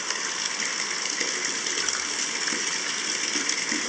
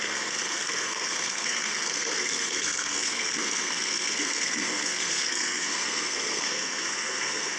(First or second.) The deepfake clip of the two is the second